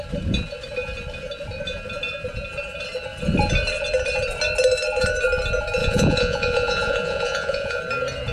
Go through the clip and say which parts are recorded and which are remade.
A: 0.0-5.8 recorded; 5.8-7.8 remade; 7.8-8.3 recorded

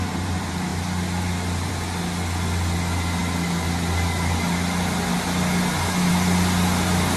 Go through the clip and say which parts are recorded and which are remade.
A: 0.0-7.2 recorded

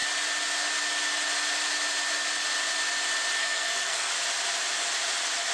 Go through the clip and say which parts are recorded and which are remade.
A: 0.0-3.4 recorded; 3.4-4.1 remade; 4.1-5.5 recorded

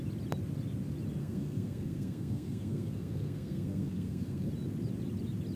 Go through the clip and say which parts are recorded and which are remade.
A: 0.0-1.2 recorded; 1.2-4.5 remade; 4.5-5.6 recorded

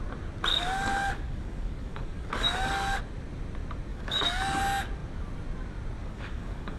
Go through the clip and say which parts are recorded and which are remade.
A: 0.0-0.5 recorded; 0.5-3.0 remade; 3.0-3.9 recorded; 3.9-4.6 remade; 4.6-6.0 recorded; 6.0-6.8 remade